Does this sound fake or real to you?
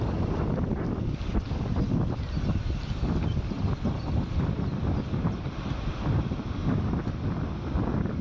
real